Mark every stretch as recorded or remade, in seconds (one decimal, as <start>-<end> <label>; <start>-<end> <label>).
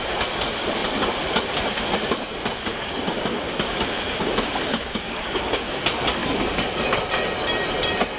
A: 0.0-2.7 recorded; 2.7-4.3 remade; 4.3-4.7 recorded; 4.7-5.7 remade; 5.7-8.2 recorded